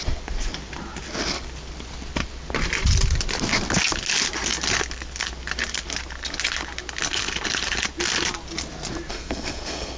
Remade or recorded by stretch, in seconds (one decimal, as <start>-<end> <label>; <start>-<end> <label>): 0.0-9.1 recorded; 9.1-10.0 remade